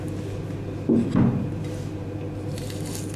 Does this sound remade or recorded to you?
recorded